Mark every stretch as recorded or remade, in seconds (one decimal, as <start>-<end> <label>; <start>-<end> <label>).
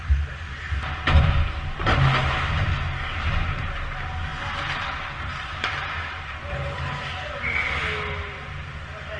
0.0-9.2 recorded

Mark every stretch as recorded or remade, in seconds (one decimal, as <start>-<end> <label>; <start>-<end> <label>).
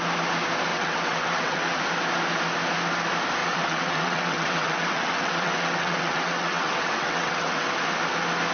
0.0-0.7 recorded; 0.7-1.8 remade; 1.8-3.4 recorded; 3.4-7.7 remade; 7.7-8.5 recorded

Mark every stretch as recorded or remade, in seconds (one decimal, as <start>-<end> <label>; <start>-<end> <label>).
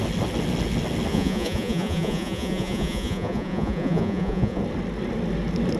0.0-1.1 recorded; 1.1-4.6 remade; 4.6-5.8 recorded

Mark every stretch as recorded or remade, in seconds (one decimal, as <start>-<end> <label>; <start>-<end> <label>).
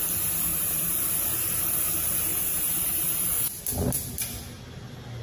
0.0-0.5 recorded; 0.5-1.1 remade; 1.1-2.3 recorded; 2.3-3.6 remade; 3.6-5.2 recorded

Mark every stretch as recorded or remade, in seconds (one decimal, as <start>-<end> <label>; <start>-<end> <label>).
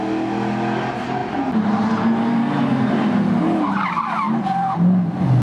0.0-5.4 recorded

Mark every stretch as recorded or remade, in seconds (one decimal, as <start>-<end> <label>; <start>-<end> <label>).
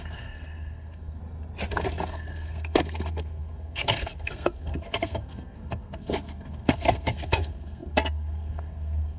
0.0-1.2 remade; 1.2-1.7 recorded; 1.7-9.2 remade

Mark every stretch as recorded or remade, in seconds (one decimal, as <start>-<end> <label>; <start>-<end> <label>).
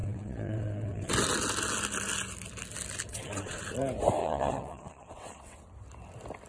0.0-1.1 remade; 1.1-3.1 recorded; 3.1-3.7 remade; 3.7-4.2 recorded; 4.2-5.6 remade; 5.6-6.5 recorded